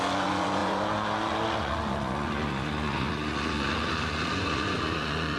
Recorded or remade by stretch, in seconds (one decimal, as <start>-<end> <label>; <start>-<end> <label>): 0.0-5.4 remade